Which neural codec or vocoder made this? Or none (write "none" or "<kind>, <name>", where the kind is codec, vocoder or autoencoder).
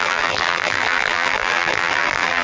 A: vocoder, BigVGAN v2